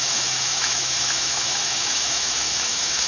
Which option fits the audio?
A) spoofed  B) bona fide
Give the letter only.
A